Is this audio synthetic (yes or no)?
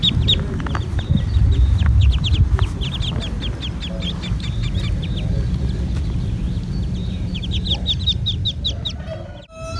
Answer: no